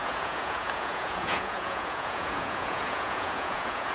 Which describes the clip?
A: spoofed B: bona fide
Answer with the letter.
A